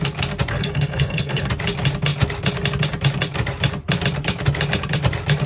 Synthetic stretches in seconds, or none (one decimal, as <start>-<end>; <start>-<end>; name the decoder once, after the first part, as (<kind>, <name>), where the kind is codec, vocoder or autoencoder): 0.5-1.5 (codec, SNAC)